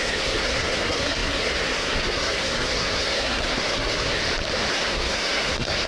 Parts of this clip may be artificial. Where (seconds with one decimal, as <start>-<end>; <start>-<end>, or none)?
0.0-4.2; 4.7-5.9